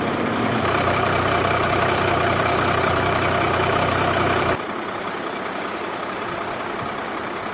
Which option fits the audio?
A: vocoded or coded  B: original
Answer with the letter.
A